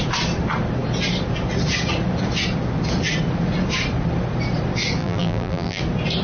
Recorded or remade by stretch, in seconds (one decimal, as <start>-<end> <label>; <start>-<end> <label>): 0.0-5.0 recorded; 5.0-5.8 remade; 5.8-6.2 recorded